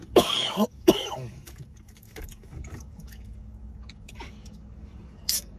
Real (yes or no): no